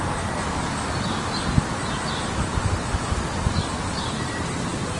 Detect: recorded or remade recorded